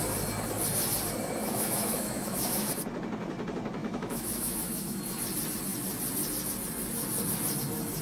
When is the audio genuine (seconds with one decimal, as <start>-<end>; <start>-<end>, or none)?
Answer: 0.0-1.4; 2.7-3.8; 5.0-8.0